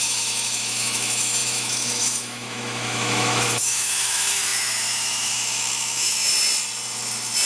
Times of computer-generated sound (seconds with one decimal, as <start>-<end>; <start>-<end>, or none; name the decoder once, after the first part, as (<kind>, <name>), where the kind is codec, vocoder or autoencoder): 0.0-6.3 (autoencoder, DAC-VAE)